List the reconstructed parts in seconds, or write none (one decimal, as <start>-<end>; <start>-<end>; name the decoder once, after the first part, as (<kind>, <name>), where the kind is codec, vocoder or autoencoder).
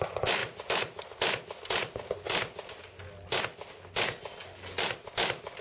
none